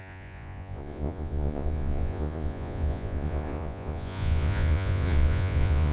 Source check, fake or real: fake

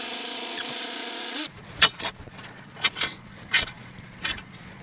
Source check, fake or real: fake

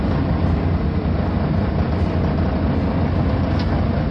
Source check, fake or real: real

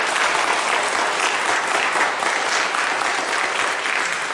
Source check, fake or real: real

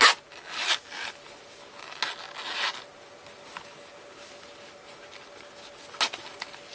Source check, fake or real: real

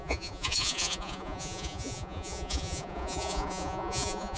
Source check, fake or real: fake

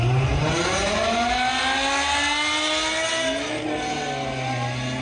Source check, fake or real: real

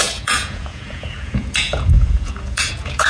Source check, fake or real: fake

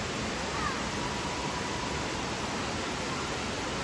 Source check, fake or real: real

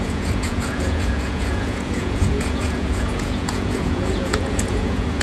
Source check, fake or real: fake